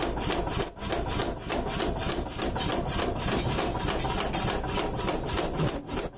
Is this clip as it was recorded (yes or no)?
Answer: yes